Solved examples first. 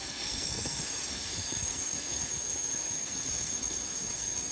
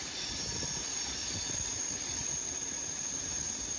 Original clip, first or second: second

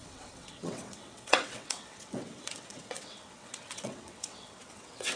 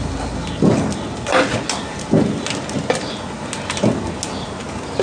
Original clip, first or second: second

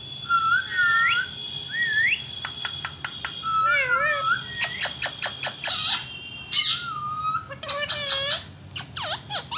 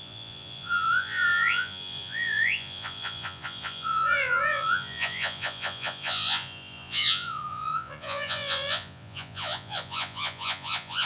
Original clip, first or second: first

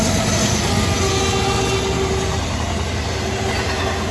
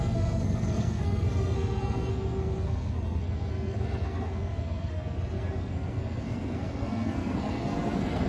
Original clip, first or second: first